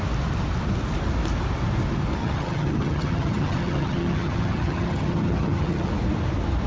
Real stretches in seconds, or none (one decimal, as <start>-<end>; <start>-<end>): 0.0-2.2; 5.9-6.7